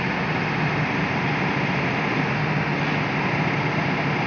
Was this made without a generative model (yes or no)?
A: yes